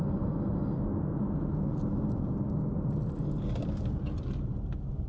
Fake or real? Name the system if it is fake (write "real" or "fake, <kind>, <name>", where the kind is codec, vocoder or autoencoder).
real